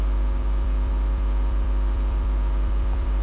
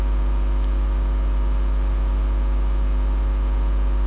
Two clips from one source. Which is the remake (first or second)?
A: first